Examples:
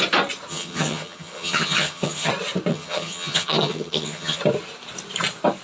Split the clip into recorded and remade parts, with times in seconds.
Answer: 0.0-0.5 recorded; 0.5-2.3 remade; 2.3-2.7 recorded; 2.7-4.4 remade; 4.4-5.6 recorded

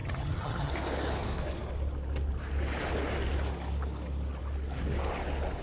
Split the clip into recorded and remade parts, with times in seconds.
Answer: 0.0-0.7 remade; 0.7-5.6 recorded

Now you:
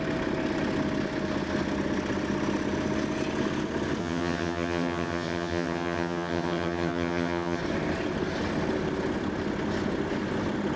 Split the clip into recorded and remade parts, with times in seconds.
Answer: 0.0-4.0 recorded; 4.0-7.6 remade; 7.6-10.8 recorded

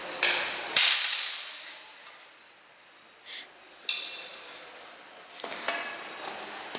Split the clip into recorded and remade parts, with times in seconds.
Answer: 0.0-6.8 recorded

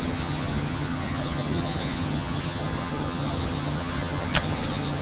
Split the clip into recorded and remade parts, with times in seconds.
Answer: 0.0-5.0 remade

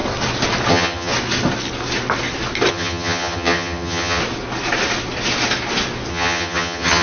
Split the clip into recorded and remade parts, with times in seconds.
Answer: 0.0-0.7 recorded; 0.7-1.1 remade; 1.1-2.7 recorded; 2.7-4.2 remade; 4.2-6.1 recorded; 6.1-7.0 remade

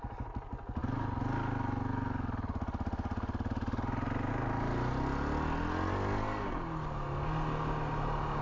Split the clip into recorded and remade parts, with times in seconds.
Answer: 0.0-8.4 recorded